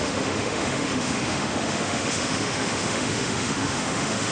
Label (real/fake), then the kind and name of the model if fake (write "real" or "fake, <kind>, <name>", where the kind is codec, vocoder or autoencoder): fake, autoencoder, DAC-VAE